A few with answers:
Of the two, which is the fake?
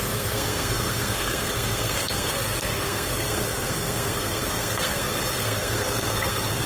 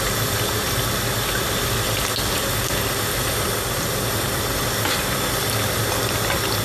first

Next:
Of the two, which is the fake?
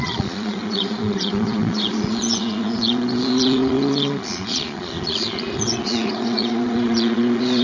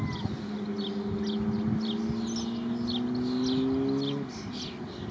first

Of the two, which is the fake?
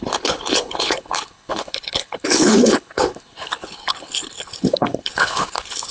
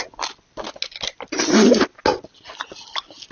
first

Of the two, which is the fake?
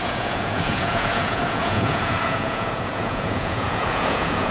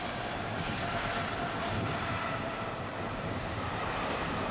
first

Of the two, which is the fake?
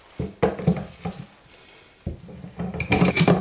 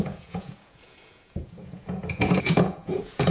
second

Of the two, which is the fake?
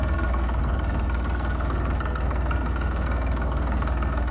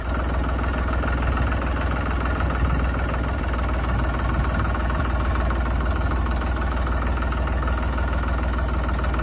first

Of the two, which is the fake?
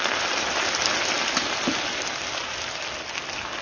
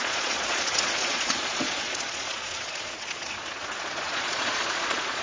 second